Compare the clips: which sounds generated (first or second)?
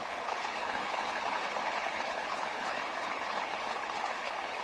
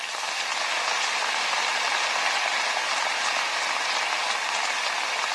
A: first